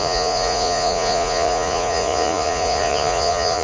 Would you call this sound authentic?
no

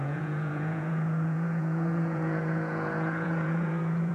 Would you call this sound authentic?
no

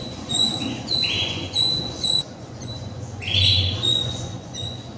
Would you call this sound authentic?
no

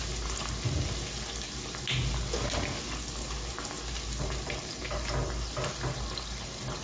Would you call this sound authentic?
yes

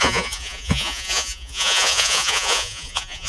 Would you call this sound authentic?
no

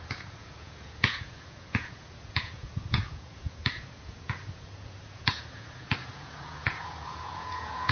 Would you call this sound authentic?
no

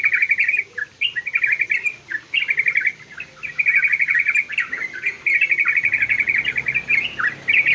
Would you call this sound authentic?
yes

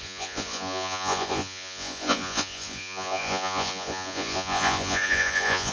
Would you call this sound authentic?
no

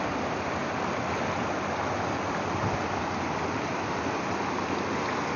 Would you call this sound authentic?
yes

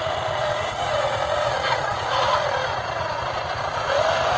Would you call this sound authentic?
no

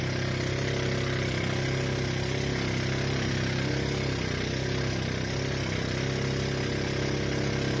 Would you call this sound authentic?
yes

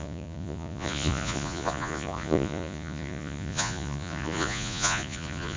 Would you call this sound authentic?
no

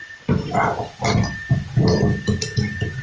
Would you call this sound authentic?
yes